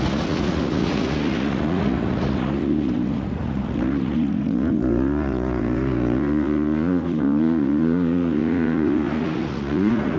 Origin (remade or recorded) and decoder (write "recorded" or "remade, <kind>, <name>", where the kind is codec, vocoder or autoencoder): remade, vocoder, Vocos